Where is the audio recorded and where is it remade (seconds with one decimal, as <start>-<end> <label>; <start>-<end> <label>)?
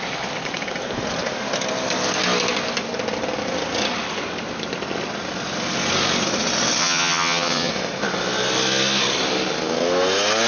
0.0-6.8 recorded; 6.8-7.7 remade; 7.7-10.5 recorded